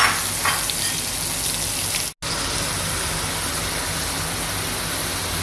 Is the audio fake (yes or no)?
no